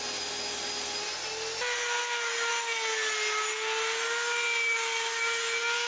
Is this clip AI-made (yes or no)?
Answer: no